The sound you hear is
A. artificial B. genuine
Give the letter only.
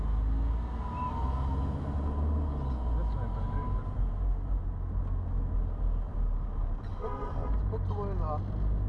B